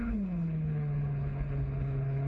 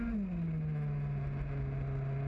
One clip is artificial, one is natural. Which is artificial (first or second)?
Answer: first